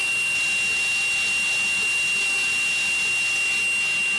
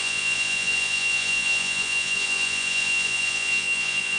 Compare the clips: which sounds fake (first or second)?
second